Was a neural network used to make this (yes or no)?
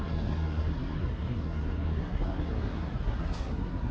yes